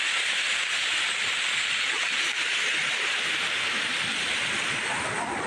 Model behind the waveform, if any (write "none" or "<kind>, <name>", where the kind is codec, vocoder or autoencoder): none